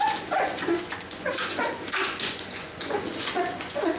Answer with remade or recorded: remade